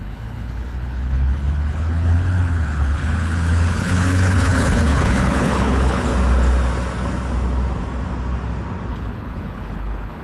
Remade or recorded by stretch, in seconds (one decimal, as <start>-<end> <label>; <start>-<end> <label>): 0.0-6.1 remade; 6.1-8.9 recorded; 8.9-10.2 remade